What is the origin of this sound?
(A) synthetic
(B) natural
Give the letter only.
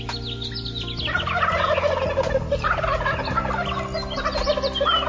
B